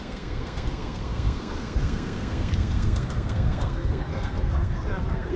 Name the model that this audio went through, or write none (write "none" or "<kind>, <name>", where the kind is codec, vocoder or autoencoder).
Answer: codec, SNAC